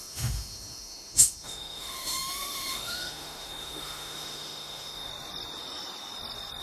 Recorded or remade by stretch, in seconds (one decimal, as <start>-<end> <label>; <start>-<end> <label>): 0.0-5.1 remade; 5.1-6.6 recorded